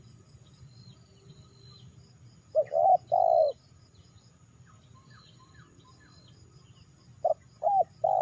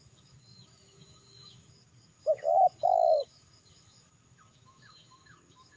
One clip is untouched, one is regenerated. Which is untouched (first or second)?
first